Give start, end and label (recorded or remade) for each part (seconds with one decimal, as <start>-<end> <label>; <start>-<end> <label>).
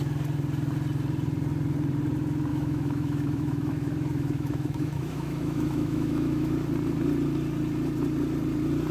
0.0-2.5 recorded; 2.5-6.5 remade; 6.5-8.9 recorded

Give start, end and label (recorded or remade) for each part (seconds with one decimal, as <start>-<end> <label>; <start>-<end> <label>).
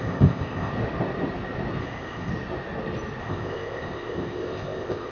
0.0-0.7 remade; 0.7-1.8 recorded; 1.8-2.3 remade; 2.3-3.2 recorded; 3.2-5.1 remade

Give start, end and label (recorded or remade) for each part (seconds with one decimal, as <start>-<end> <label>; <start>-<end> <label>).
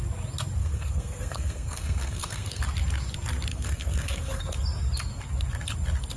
0.0-0.6 recorded; 0.6-2.6 remade; 2.6-3.5 recorded; 3.5-4.4 remade; 4.4-6.2 recorded